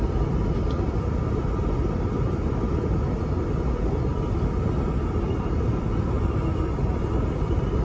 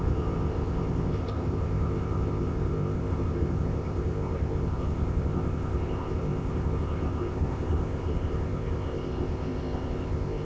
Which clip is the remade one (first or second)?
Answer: second